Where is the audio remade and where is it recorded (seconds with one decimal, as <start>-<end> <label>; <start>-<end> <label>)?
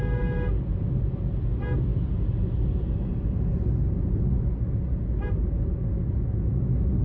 0.0-7.0 recorded